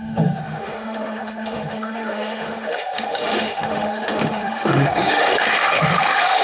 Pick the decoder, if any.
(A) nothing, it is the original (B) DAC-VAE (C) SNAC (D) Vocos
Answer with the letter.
B